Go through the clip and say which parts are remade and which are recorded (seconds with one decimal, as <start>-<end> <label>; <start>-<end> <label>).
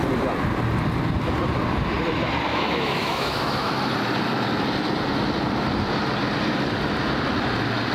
0.0-2.5 recorded; 2.5-3.7 remade; 3.7-7.9 recorded